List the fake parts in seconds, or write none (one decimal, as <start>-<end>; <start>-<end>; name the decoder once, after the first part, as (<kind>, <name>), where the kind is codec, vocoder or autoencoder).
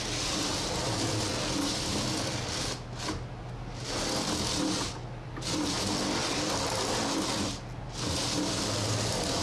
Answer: none